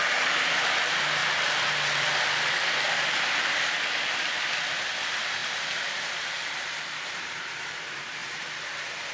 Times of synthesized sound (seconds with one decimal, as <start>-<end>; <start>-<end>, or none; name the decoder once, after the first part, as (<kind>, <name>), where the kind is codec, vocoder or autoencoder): 0.0-1.2 (vocoder, BigVGAN v2); 5.0-9.1